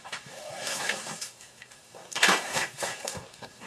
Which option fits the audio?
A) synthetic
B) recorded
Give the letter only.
A